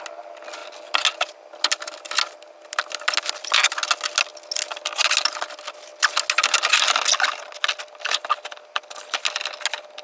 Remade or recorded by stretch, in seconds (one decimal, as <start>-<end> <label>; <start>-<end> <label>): 0.0-10.0 recorded